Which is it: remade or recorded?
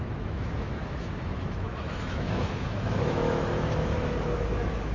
remade